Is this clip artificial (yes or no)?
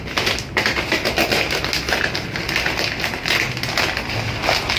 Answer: no